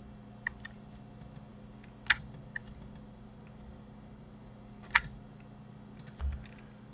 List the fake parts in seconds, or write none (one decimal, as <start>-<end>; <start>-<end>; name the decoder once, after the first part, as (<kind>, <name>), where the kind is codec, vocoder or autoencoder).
none